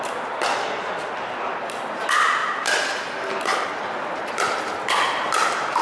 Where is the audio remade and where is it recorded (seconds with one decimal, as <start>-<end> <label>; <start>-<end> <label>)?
0.0-5.8 recorded